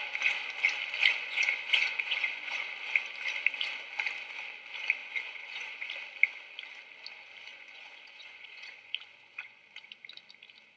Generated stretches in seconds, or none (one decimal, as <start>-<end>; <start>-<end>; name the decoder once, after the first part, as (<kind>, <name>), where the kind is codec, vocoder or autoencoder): 1.1-2.7 (vocoder, Vocos); 5.0-5.9; 7.5-9.6